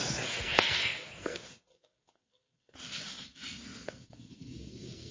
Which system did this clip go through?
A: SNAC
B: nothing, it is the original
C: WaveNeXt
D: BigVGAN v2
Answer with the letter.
A